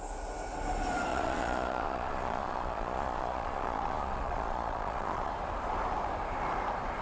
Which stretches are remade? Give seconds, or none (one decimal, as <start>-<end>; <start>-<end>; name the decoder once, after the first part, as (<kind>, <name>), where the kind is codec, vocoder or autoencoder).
1.1-5.3 (vocoder, Vocos)